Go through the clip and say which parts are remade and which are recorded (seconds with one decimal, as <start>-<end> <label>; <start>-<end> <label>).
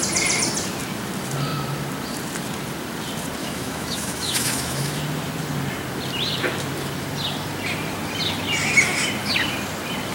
0.0-3.4 recorded; 3.4-5.0 remade; 5.0-10.1 recorded